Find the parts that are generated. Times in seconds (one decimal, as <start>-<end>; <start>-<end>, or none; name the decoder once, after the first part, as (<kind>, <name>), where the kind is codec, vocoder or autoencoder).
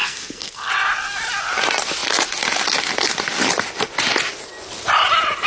0.0-0.7 (codec, SNAC)